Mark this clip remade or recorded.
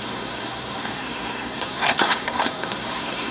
remade